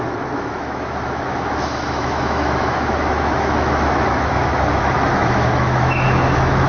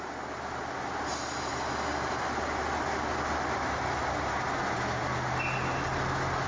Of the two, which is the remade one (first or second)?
first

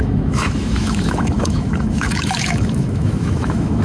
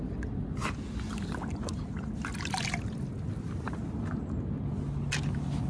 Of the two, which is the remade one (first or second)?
first